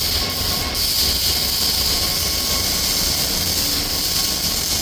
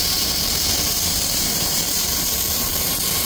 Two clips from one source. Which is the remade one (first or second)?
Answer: second